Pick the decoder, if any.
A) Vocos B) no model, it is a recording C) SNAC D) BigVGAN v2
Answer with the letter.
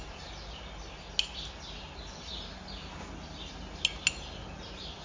B